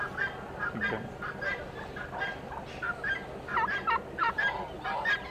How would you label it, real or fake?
real